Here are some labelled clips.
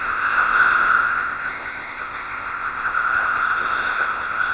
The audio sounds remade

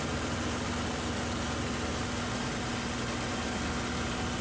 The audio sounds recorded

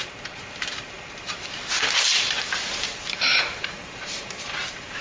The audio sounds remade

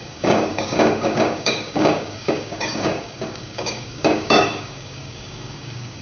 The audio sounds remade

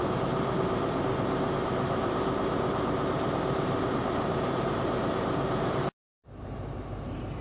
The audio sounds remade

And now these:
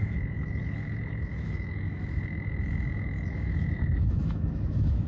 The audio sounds remade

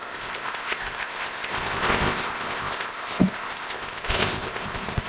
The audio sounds remade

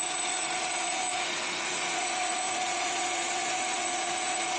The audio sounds remade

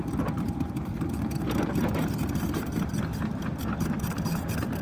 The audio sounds remade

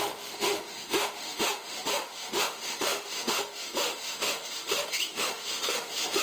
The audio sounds remade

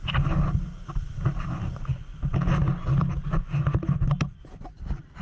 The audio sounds recorded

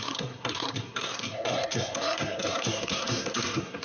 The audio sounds remade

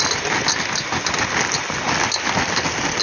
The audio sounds recorded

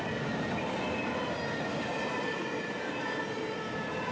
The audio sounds recorded